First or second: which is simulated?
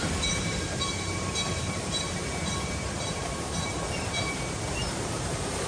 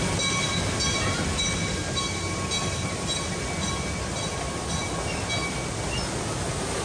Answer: first